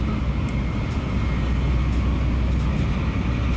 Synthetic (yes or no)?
no